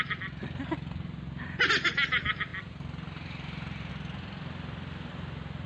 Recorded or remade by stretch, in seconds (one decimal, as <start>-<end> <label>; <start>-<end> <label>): 0.0-5.7 recorded